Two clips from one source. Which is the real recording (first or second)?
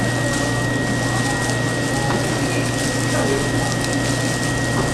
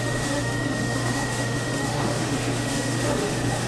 first